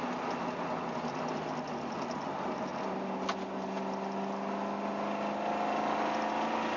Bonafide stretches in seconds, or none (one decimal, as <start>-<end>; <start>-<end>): 0.0-6.8